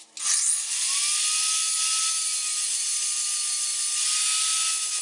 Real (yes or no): yes